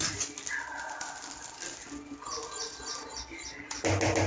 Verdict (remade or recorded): recorded